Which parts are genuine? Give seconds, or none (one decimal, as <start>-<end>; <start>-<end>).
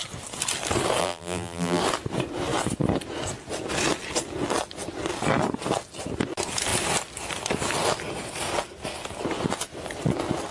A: 0.0-1.0; 1.8-10.5